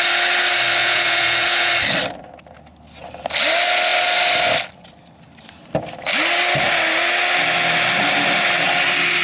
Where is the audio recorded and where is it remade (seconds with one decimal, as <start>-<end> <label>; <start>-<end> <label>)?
0.0-0.8 recorded; 0.8-1.7 remade; 1.7-9.2 recorded